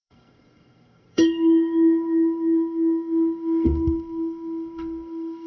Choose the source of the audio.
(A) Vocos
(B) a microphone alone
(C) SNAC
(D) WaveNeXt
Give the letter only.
C